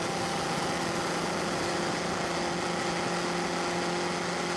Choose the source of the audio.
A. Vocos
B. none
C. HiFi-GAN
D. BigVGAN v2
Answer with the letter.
B